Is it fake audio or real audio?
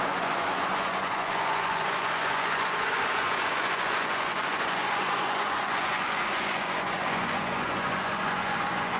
fake